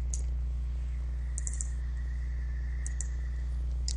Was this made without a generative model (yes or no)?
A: yes